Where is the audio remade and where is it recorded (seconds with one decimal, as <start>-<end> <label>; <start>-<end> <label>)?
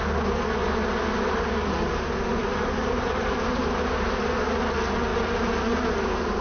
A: 0.0-2.4 recorded; 2.4-3.6 remade; 3.6-5.1 recorded; 5.1-5.6 remade; 5.6-6.4 recorded